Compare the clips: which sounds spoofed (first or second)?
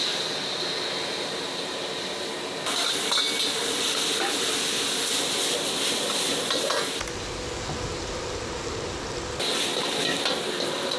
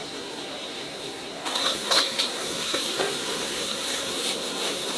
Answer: second